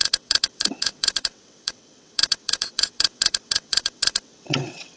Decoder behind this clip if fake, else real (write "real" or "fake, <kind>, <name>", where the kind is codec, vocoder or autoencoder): fake, vocoder, WaveNeXt